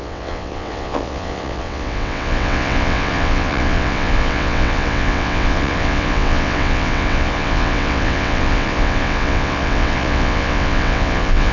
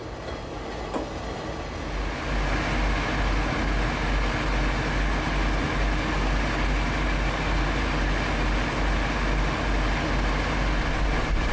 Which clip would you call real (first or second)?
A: second